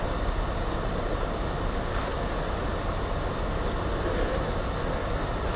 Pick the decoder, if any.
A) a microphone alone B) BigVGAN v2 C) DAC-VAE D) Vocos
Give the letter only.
A